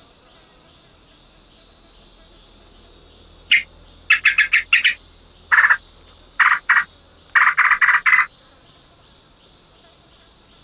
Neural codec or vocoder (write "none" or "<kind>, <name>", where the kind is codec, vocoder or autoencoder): none